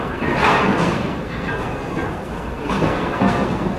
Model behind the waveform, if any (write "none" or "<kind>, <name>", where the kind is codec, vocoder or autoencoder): codec, SNAC